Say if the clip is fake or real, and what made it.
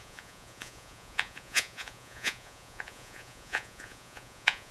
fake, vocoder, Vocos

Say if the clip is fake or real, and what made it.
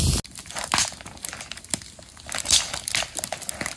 real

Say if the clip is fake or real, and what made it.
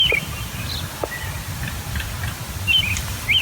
real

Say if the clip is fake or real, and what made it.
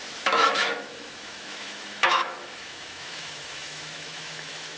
fake, autoencoder, DAC-VAE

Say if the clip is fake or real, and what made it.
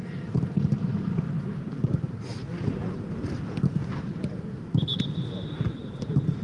real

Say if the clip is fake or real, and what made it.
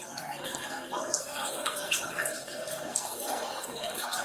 fake, codec, SNAC